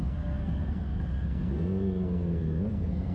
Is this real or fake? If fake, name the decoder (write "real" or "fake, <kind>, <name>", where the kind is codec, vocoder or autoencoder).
fake, codec, SNAC